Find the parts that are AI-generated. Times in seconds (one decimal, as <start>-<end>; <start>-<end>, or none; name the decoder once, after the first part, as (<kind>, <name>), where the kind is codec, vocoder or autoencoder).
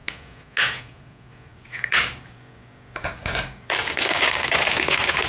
1.5-4.4 (codec, DAC)